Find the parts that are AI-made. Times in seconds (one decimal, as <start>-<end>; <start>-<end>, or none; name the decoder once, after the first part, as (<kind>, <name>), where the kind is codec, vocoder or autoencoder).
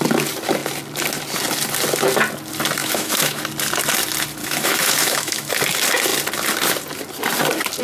2.8-3.4 (autoencoder, DAC-VAE); 4.4-5.5